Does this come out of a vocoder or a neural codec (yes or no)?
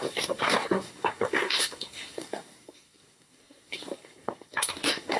yes